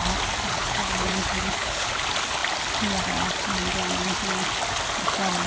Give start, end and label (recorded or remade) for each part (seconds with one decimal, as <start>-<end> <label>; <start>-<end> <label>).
0.0-0.5 recorded; 0.5-1.9 remade; 1.9-5.5 recorded